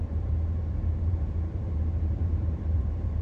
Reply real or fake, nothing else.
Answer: fake